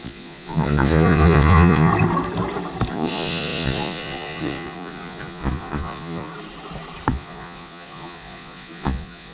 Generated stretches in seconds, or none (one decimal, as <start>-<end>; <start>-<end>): 0.0-1.9; 2.9-6.3; 7.1-9.3